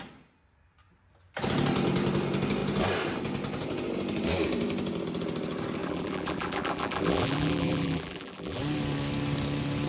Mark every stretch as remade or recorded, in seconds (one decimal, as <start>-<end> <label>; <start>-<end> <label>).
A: 0.0-5.8 recorded; 5.8-8.6 remade; 8.6-9.9 recorded